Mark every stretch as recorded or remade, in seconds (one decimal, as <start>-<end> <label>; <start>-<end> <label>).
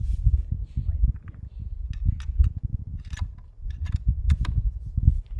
0.0-0.5 remade; 0.5-2.7 recorded; 2.7-5.0 remade; 5.0-5.4 recorded